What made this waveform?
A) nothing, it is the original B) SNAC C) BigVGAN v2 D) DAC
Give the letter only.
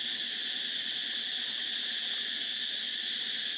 A